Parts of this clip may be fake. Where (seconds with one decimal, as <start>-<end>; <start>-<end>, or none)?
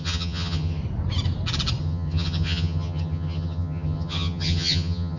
0.0-0.8; 1.8-5.2